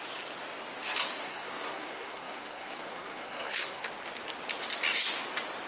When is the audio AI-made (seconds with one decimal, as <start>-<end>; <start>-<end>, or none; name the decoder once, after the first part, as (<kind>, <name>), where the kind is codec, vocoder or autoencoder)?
1.1-3.9 (codec, SNAC)